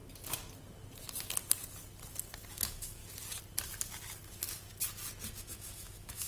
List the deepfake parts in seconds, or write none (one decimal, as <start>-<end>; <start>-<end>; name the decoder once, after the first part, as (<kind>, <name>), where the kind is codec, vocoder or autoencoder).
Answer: 2.5-3.0 (autoencoder, DAC-VAE); 5.4-6.3